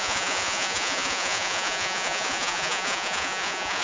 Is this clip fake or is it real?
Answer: fake